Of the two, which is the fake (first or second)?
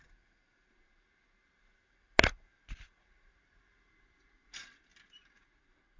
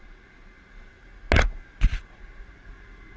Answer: first